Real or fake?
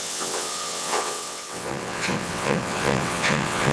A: fake